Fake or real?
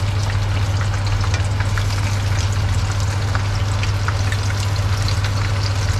real